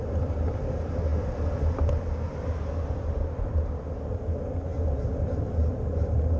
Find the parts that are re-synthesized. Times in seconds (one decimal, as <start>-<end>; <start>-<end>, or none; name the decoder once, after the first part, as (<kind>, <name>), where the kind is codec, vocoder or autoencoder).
none